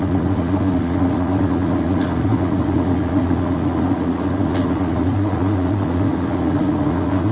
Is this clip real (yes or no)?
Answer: no